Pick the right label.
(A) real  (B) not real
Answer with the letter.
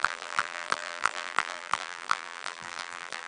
B